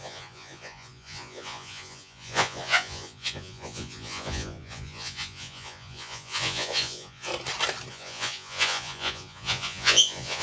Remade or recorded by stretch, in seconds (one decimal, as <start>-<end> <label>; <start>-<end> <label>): 0.0-7.3 remade; 7.3-7.9 recorded; 7.9-10.4 remade